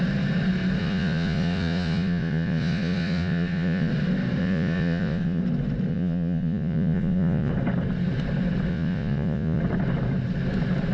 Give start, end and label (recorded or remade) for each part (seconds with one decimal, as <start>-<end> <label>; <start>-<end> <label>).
0.0-0.8 recorded; 0.8-3.9 remade; 3.9-4.4 recorded; 4.4-5.4 remade; 5.4-5.9 recorded; 5.9-7.5 remade; 7.5-8.7 recorded; 8.7-9.6 remade; 9.6-10.9 recorded